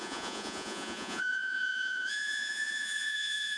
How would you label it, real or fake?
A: fake